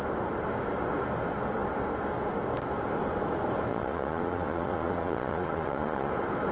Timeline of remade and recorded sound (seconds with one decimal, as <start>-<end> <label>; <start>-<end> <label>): 0.0-3.7 recorded; 3.7-6.1 remade; 6.1-6.5 recorded

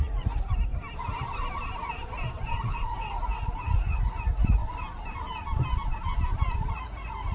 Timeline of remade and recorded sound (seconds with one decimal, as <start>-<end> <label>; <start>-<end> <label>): 0.0-0.7 remade; 0.7-2.6 recorded; 2.6-4.6 remade; 4.6-6.7 recorded; 6.7-7.3 remade

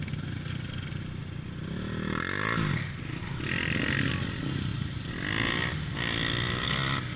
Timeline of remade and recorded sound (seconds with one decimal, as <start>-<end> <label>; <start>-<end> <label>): 0.0-7.2 recorded

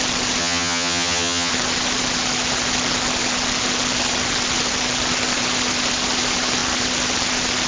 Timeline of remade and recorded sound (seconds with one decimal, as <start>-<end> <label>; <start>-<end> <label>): 0.0-0.4 recorded; 0.4-1.5 remade; 1.5-7.7 recorded

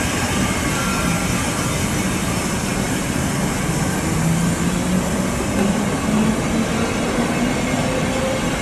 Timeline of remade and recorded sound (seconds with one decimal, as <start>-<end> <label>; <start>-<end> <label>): 0.0-2.7 recorded; 2.7-3.4 remade; 3.4-8.6 recorded

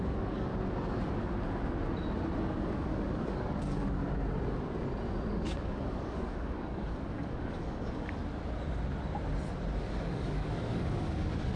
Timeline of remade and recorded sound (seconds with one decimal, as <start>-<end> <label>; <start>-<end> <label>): 0.0-0.5 remade; 0.5-2.4 recorded; 2.4-4.2 remade; 4.2-5.3 recorded; 5.3-8.2 remade; 8.2-9.8 recorded; 9.8-11.6 remade

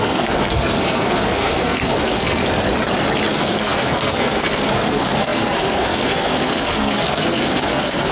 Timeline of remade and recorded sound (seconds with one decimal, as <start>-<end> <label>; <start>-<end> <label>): 0.0-2.4 remade; 2.4-3.3 recorded; 3.3-8.1 remade

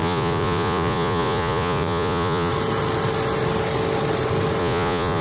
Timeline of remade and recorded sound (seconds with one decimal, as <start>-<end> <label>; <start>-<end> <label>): 0.0-2.5 remade; 2.5-4.6 recorded; 4.6-5.2 remade